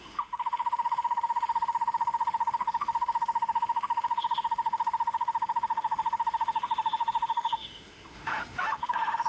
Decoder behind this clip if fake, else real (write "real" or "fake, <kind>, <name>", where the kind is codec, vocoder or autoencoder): fake, autoencoder, DAC-VAE